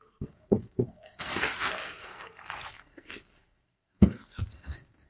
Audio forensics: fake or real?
fake